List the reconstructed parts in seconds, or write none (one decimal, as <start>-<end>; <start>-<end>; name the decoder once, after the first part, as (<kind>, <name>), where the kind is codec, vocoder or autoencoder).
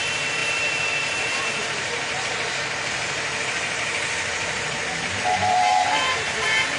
0.0-6.8 (vocoder, BigVGAN v2)